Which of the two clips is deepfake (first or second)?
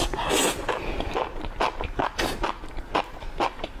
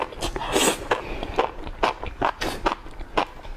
first